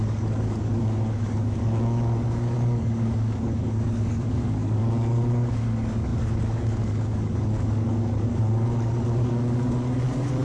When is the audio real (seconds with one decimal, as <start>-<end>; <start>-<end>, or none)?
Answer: none